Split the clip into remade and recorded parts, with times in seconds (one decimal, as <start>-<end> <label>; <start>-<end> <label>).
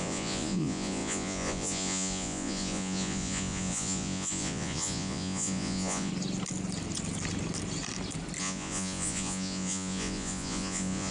0.0-6.1 remade; 6.1-8.4 recorded; 8.4-11.1 remade